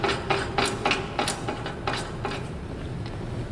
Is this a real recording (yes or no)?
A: yes